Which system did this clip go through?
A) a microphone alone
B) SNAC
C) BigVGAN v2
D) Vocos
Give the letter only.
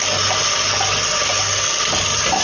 A